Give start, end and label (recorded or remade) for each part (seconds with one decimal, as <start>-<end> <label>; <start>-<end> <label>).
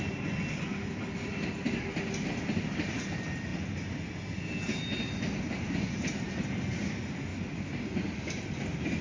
0.0-9.0 recorded